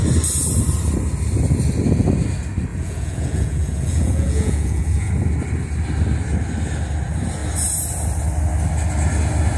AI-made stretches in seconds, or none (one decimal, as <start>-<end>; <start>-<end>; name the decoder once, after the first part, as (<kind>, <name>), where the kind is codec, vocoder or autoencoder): 2.7-5.1 (vocoder, Vocos)